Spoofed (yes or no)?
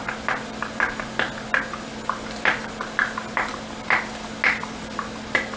no